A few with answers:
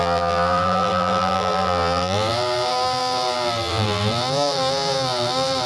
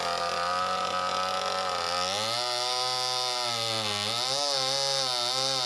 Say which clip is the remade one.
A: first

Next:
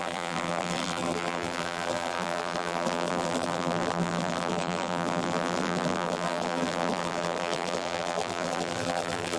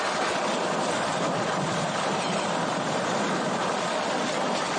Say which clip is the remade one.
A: first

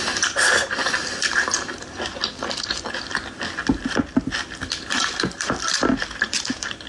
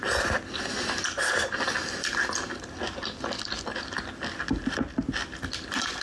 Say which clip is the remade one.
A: first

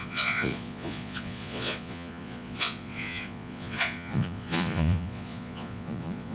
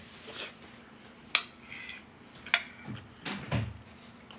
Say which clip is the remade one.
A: first